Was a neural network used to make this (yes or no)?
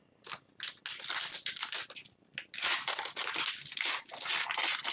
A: no